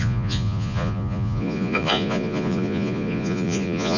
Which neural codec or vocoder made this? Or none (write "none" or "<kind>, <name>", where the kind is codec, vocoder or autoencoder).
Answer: vocoder, Vocos